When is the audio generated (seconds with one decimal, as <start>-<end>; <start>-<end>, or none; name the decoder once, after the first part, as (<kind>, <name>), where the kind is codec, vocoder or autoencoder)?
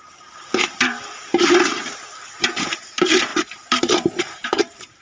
0.0-5.0 (vocoder, BigVGAN v2)